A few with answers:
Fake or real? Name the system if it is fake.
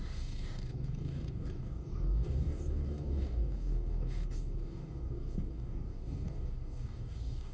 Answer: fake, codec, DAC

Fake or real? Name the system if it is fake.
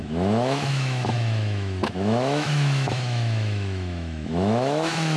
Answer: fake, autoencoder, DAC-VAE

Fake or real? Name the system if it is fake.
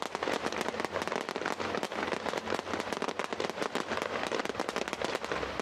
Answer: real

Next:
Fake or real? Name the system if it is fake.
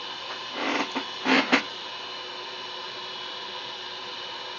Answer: real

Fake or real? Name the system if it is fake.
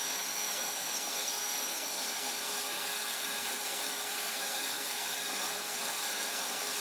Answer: fake, codec, SNAC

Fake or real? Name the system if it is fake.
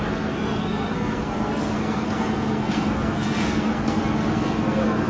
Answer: fake, codec, SNAC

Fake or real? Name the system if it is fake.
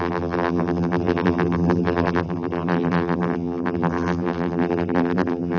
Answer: fake, vocoder, BigVGAN v2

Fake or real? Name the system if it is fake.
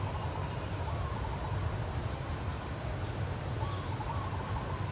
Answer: real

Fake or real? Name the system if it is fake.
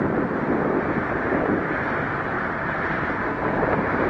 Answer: real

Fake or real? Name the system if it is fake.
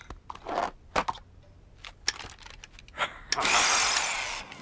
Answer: real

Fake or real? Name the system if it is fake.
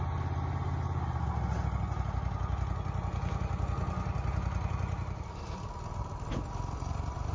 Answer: real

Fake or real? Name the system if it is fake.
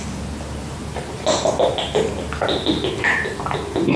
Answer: real